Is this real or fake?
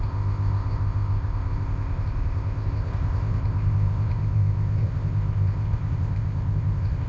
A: fake